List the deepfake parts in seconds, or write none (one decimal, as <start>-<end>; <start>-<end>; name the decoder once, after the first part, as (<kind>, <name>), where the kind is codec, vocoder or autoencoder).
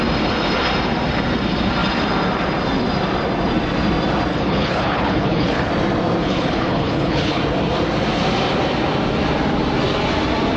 4.3-5.7 (codec, HILCodec); 6.2-7.4